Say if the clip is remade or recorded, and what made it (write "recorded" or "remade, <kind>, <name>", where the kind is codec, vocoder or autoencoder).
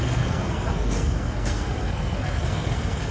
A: remade, codec, SNAC